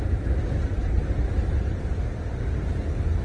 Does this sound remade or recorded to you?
recorded